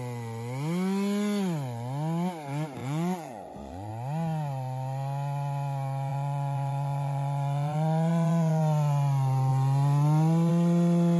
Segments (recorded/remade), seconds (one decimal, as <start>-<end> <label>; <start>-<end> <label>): 0.0-2.8 recorded; 2.8-3.9 remade; 3.9-6.1 recorded; 6.1-8.6 remade; 8.6-11.2 recorded